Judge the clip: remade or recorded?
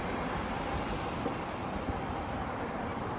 recorded